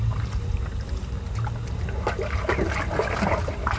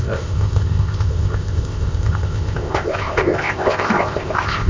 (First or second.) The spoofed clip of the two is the second